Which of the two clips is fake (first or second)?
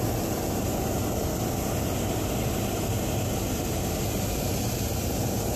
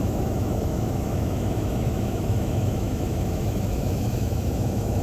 second